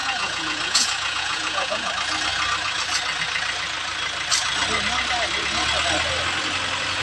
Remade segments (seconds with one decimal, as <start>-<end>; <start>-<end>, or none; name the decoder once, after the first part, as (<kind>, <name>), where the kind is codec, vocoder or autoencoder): 0.0-1.9 (vocoder, Vocos)